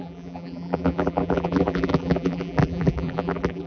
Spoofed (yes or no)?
yes